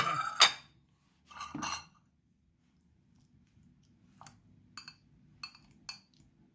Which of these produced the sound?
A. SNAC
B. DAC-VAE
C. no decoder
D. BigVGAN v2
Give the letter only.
C